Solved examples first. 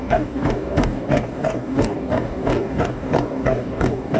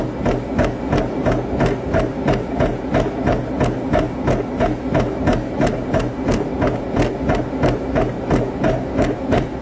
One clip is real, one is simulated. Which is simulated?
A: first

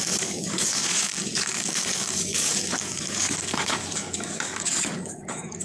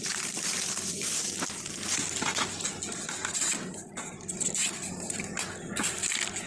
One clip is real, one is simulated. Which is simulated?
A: first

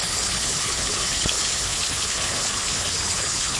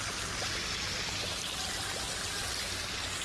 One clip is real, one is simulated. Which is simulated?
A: first